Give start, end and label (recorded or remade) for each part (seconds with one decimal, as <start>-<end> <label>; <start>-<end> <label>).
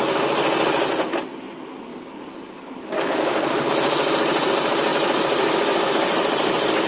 0.0-1.9 recorded; 1.9-3.7 remade; 3.7-6.9 recorded